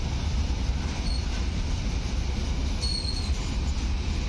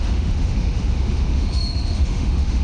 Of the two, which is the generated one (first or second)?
second